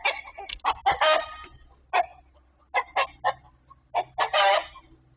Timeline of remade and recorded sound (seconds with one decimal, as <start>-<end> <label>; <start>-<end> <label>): 0.0-5.2 recorded